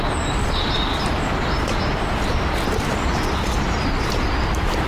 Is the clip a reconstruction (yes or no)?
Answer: yes